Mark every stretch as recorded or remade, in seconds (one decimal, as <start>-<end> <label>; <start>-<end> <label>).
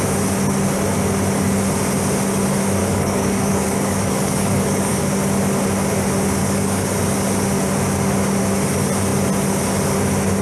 0.0-2.8 recorded; 2.8-5.0 remade; 5.0-6.4 recorded; 6.4-6.9 remade; 6.9-10.4 recorded